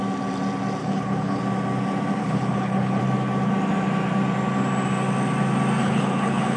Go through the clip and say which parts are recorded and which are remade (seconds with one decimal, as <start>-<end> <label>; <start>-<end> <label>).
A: 0.0-0.8 recorded; 0.8-1.4 remade; 1.4-2.2 recorded; 2.2-3.0 remade; 3.0-5.8 recorded; 5.8-6.6 remade